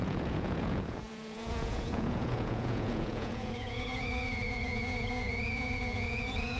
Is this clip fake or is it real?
fake